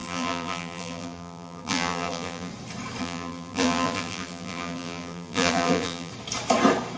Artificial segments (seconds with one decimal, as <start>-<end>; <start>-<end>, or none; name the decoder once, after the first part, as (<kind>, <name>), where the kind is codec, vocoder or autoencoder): 0.0-2.5 (vocoder, BigVGAN v2); 3.0-6.1